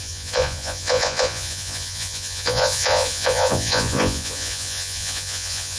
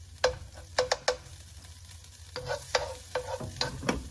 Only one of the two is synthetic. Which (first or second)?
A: first